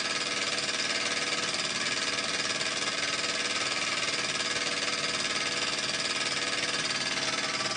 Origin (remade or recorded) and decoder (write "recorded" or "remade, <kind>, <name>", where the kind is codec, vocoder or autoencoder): recorded